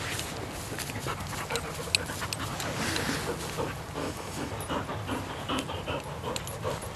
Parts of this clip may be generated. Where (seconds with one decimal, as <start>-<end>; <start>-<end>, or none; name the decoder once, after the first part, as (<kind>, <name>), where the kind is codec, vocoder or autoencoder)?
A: 4.0-4.5 (autoencoder, DAC-VAE)